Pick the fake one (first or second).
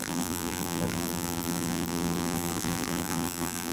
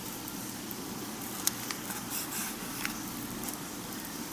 first